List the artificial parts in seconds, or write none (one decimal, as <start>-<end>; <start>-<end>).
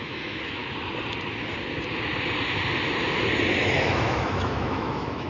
0.0-0.6; 3.8-5.3